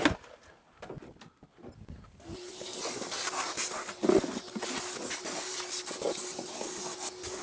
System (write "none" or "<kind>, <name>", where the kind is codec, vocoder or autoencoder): none